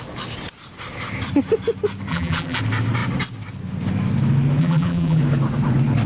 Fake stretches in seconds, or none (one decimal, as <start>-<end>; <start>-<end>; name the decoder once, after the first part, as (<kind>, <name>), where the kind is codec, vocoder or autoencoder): 2.1-2.6 (vocoder, BigVGAN v2); 4.6-5.2